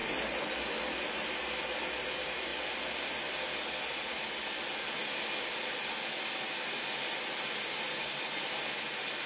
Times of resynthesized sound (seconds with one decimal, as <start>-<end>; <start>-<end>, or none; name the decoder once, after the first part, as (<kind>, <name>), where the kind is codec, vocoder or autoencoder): none